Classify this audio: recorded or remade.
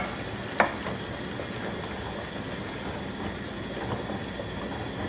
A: recorded